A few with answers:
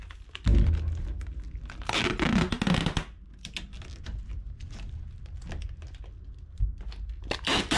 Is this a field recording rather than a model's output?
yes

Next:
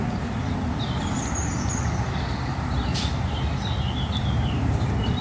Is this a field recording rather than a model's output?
no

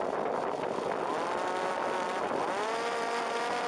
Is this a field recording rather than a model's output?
yes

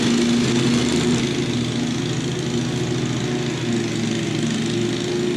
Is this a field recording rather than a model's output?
yes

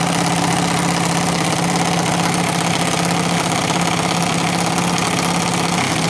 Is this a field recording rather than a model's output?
yes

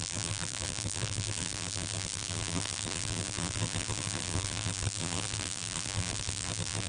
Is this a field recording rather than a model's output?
no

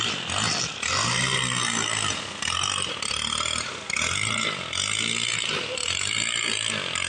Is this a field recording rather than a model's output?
yes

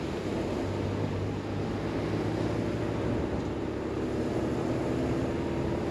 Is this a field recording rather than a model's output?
yes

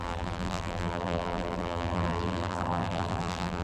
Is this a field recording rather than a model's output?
no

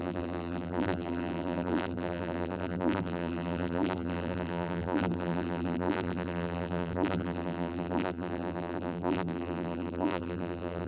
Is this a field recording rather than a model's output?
no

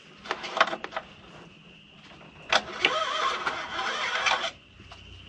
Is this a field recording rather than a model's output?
yes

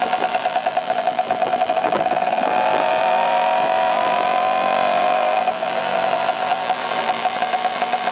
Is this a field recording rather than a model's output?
no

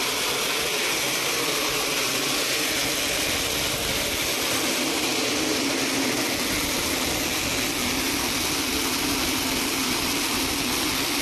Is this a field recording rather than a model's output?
yes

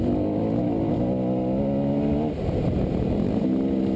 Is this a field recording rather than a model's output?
yes